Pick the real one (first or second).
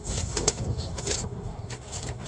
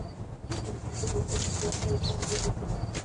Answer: second